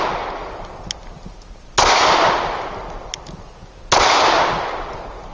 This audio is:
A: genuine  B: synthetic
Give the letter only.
A